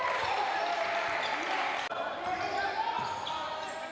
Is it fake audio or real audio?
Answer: real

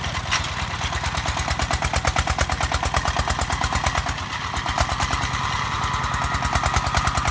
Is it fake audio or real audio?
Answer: real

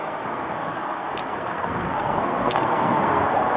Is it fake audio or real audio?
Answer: fake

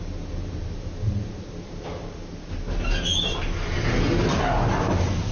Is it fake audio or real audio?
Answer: real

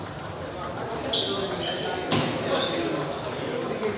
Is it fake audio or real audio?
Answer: real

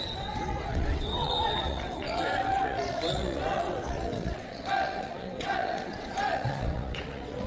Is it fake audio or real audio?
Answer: fake